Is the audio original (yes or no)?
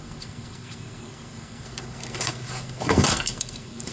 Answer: no